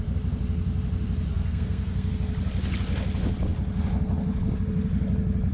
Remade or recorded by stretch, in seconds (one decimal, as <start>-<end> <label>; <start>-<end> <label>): 0.0-1.3 recorded; 1.3-2.1 remade; 2.1-5.5 recorded